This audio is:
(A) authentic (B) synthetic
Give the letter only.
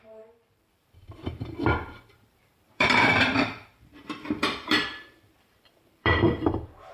B